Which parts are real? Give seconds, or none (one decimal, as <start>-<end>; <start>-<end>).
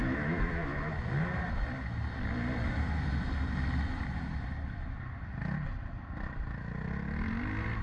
0.9-7.8